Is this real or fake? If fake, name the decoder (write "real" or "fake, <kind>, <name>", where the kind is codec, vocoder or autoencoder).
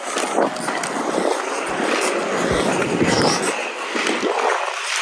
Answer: real